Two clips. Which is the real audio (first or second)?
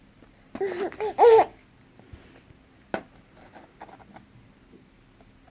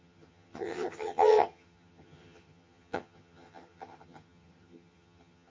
first